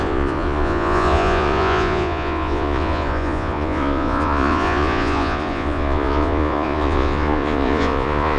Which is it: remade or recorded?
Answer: remade